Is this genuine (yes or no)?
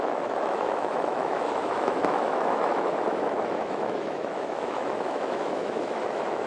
no